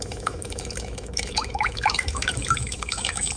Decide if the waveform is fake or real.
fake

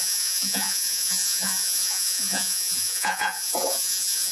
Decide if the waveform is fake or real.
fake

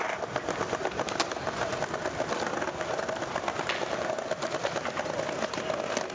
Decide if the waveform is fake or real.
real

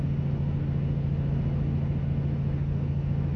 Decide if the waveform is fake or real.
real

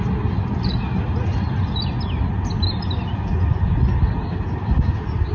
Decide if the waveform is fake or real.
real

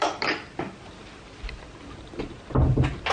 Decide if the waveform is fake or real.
real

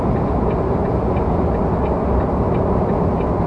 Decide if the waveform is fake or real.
real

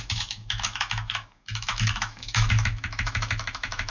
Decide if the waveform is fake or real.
fake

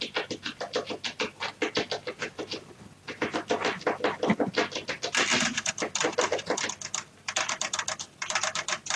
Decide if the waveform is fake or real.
fake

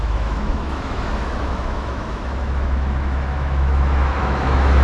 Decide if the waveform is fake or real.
fake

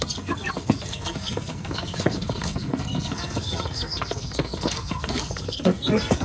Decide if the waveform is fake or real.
fake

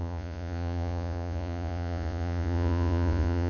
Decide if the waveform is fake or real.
fake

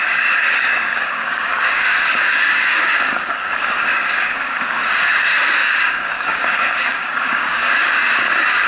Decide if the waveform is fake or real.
fake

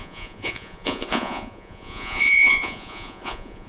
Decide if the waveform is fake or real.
fake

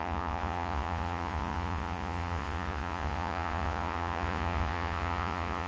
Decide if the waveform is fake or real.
fake